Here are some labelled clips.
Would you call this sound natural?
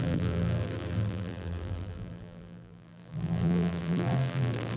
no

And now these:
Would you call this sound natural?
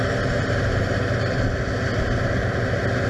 yes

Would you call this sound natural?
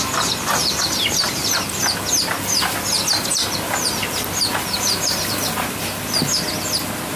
yes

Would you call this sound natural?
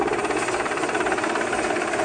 yes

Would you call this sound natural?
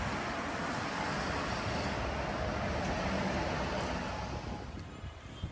yes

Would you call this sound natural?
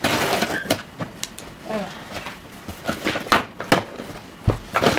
yes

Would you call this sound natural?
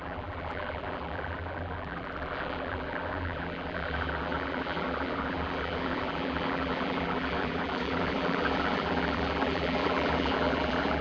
no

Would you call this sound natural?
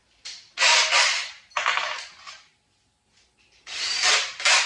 yes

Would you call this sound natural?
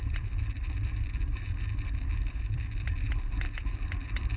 no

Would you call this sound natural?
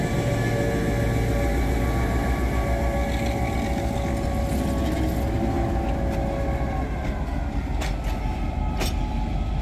yes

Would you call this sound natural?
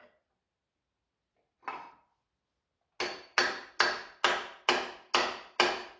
yes